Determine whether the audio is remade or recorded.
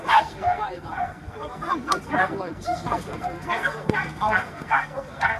remade